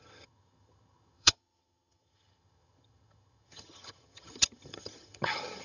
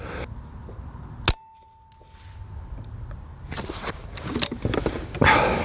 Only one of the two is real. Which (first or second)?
second